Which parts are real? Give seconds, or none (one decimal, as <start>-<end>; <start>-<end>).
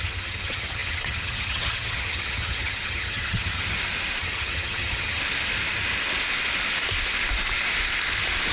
3.6-4.2; 5.2-8.5